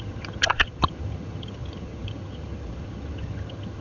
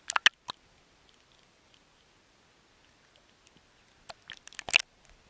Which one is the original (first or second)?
second